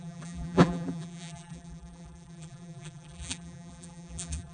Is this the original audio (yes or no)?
no